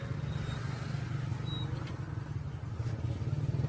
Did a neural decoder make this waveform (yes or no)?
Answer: no